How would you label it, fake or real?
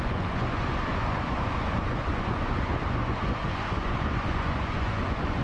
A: fake